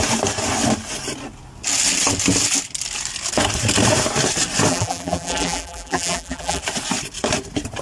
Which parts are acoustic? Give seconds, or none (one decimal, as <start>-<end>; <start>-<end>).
0.0-4.7; 6.6-7.8